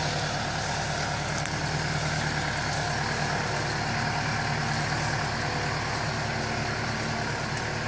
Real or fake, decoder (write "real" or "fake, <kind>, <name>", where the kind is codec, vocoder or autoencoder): real